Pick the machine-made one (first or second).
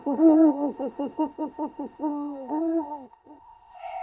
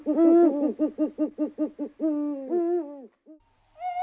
first